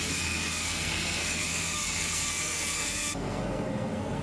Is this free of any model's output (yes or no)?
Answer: no